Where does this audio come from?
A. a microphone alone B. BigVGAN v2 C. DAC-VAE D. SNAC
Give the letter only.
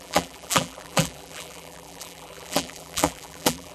B